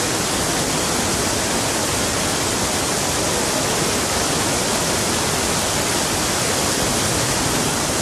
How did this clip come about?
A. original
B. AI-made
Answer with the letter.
A